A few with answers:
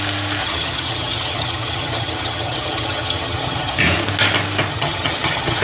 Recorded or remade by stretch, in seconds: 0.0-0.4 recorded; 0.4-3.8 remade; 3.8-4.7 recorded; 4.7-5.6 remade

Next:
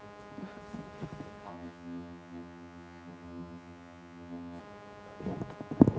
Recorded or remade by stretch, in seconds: 0.0-1.5 recorded; 1.5-4.6 remade; 4.6-6.0 recorded

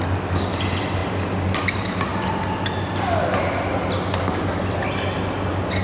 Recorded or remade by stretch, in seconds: 0.0-5.8 recorded

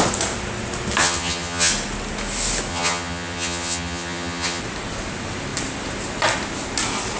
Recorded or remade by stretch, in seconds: 0.0-1.0 recorded; 1.0-1.7 remade; 1.7-2.7 recorded; 2.7-4.6 remade; 4.6-7.2 recorded

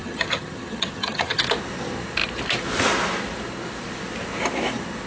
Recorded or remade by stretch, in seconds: 0.0-1.4 remade; 1.4-5.1 recorded

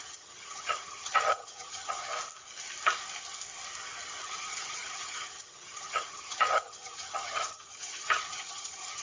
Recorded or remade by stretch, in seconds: 0.0-2.0 remade; 2.0-4.2 recorded; 4.2-9.0 remade

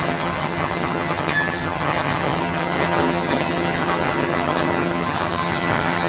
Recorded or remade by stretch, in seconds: 0.0-6.1 remade